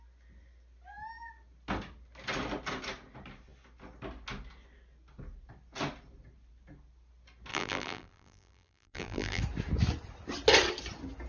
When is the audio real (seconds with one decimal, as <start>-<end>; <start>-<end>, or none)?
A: 0.0-7.5; 9.4-11.3